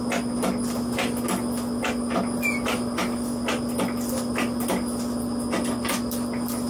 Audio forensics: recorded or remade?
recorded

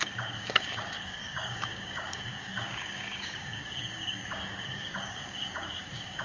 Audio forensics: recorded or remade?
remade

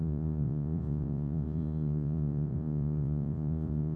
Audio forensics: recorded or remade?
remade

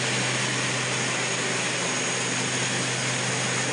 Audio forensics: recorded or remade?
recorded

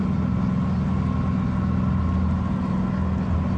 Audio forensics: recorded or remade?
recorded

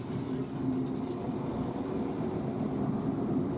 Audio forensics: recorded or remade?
recorded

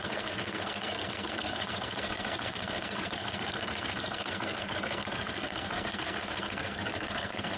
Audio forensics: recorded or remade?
remade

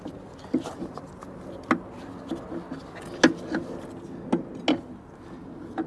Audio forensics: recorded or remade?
recorded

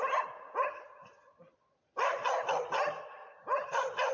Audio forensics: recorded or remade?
recorded